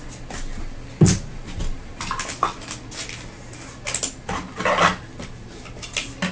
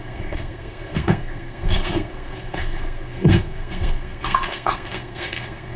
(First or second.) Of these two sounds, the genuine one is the first